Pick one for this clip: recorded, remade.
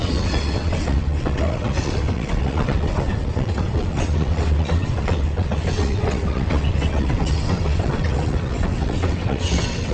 remade